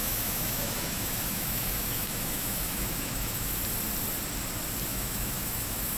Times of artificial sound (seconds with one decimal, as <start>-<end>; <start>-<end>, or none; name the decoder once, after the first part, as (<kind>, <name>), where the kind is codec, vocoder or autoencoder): 0.0-3.6 (autoencoder, DAC-VAE); 4.9-6.0